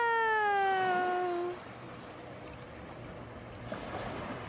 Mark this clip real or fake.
real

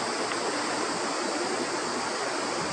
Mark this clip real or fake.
real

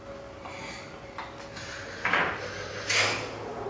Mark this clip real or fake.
real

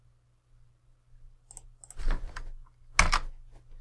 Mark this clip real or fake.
real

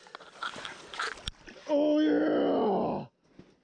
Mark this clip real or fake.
real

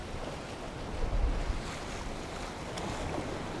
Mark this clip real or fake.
real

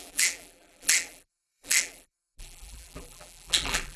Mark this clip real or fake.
fake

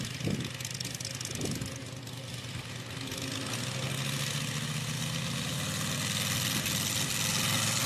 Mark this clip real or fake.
real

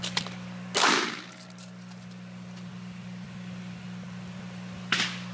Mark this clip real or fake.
real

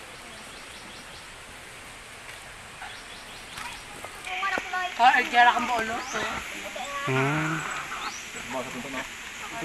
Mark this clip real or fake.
real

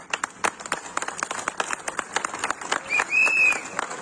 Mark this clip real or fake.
real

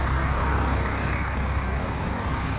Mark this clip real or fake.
fake